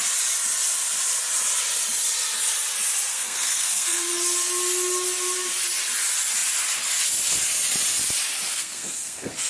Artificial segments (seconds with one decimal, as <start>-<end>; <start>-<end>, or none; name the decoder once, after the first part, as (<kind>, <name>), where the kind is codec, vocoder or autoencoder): 3.1-4.1 (codec, SNAC); 8.5-9.5